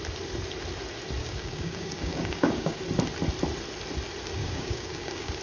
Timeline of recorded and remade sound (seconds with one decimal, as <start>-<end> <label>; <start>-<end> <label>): 0.0-1.2 recorded; 1.2-2.8 remade; 2.8-4.4 recorded; 4.4-5.4 remade